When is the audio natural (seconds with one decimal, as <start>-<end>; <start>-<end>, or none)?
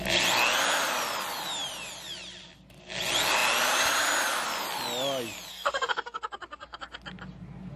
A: 0.0-5.5; 6.8-7.8